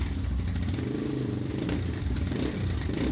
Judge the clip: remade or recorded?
remade